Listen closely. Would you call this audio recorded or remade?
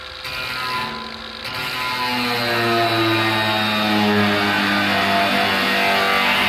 recorded